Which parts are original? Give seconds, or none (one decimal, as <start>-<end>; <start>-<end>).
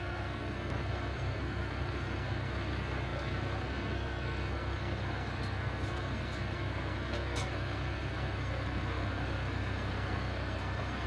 none